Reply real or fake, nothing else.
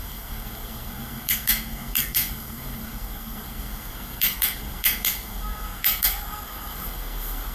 fake